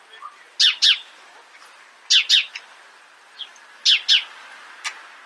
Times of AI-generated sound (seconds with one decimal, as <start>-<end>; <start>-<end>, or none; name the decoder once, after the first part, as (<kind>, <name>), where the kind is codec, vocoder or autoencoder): none

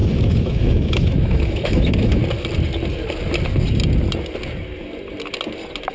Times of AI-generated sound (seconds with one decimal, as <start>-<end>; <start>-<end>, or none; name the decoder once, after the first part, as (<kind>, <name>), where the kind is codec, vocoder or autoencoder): 0.0-2.2 (autoencoder, DAC-VAE)

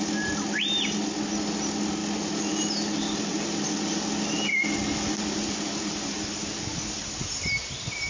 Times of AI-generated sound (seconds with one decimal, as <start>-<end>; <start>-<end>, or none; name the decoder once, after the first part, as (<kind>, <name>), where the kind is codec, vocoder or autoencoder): none